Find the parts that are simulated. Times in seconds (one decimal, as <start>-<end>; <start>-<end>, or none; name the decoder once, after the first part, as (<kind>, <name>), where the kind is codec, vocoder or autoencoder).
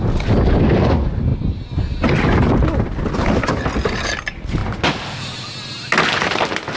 none